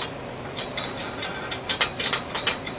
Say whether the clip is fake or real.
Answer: real